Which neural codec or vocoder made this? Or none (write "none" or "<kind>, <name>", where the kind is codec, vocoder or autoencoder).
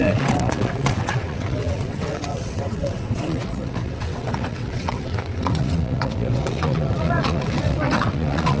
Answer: vocoder, WaveNeXt